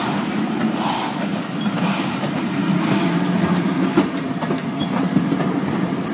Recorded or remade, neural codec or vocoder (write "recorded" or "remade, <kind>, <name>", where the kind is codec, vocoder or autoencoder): recorded